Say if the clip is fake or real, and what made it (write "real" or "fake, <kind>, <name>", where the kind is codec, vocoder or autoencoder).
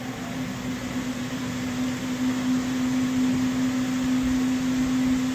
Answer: real